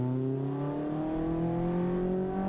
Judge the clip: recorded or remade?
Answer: recorded